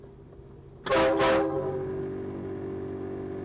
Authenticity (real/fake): real